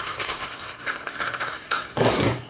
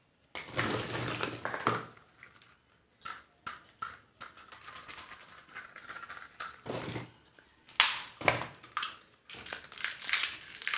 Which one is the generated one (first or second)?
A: first